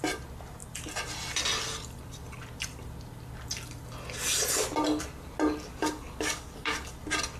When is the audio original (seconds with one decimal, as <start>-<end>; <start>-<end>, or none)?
0.0-5.7; 6.9-7.4

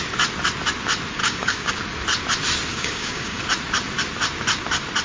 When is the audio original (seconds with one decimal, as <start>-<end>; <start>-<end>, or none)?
0.0-1.2; 1.7-2.7; 3.4-5.0

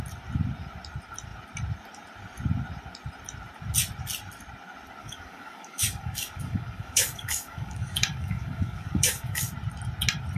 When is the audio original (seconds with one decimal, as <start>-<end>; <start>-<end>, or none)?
0.0-5.0; 9.5-10.4